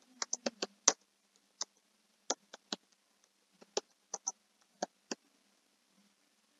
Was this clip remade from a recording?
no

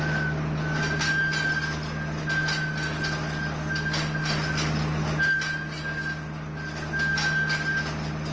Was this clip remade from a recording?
no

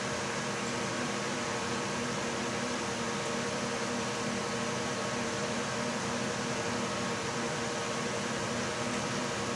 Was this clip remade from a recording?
yes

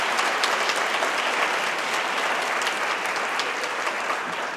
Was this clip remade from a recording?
no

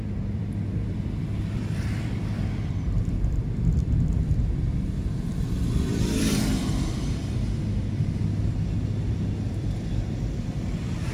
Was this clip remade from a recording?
yes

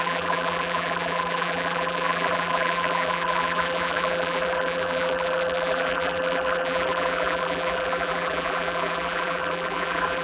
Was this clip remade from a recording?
yes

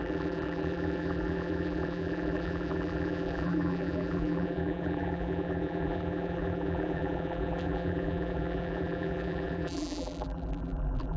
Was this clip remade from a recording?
yes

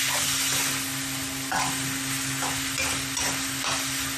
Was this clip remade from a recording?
no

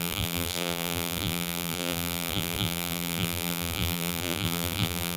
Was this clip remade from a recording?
yes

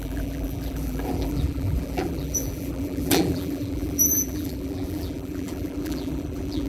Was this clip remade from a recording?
yes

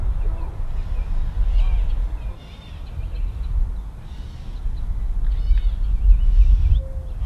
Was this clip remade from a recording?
no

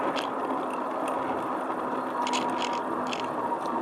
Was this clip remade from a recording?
no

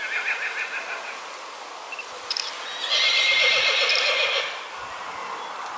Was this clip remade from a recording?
no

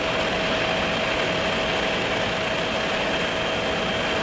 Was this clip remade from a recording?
no